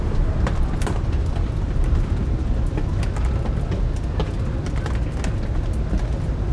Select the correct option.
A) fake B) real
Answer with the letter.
B